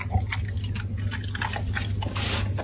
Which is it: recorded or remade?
recorded